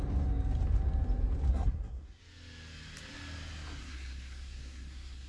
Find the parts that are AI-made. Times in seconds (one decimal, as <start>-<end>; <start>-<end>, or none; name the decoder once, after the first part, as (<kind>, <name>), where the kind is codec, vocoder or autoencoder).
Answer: 1.5-2.2 (codec, SNAC); 3.8-5.3